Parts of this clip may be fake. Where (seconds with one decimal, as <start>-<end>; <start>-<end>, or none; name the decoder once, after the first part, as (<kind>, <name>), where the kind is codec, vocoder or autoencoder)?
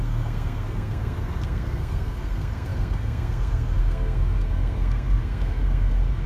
0.0-6.3 (codec, SNAC)